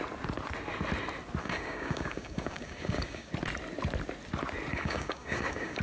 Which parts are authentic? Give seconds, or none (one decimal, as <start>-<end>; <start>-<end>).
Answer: 0.0-1.4; 3.3-4.7